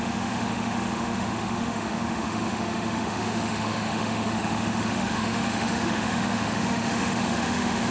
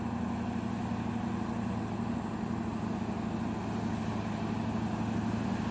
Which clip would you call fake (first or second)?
first